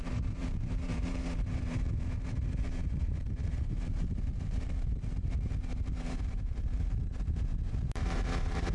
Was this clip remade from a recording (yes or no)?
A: yes